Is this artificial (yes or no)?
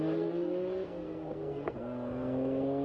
yes